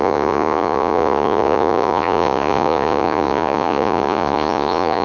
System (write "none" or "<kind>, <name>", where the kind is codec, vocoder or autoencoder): vocoder, Vocos